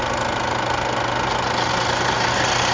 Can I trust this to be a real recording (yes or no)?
yes